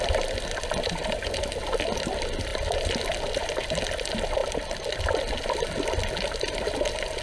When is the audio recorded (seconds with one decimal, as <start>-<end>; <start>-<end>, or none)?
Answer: 0.0-7.2